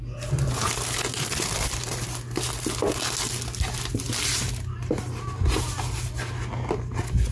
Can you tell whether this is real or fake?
real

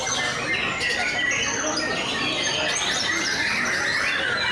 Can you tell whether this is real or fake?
real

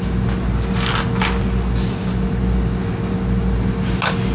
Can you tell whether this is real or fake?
real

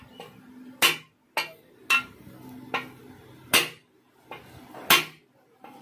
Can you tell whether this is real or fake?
real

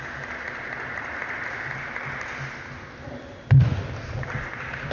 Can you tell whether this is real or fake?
real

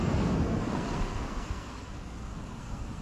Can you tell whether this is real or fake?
fake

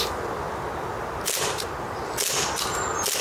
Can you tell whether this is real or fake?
real